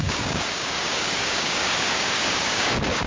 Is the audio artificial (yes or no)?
yes